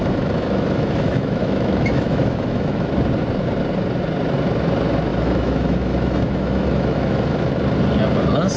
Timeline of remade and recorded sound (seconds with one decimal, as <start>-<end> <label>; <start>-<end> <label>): 0.0-2.9 remade; 2.9-5.1 recorded; 5.1-7.5 remade; 7.5-8.6 recorded